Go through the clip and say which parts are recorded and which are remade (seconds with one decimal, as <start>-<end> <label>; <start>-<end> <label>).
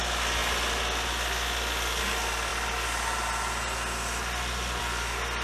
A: 0.0-5.4 recorded